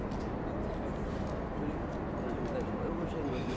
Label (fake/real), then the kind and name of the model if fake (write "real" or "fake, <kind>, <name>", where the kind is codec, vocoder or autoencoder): real